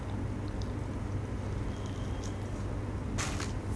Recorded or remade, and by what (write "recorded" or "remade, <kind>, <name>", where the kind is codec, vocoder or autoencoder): recorded